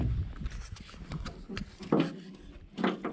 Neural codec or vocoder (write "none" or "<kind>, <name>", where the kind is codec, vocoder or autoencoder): none